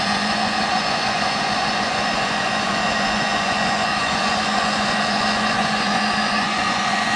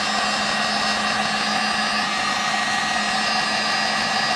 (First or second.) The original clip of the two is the second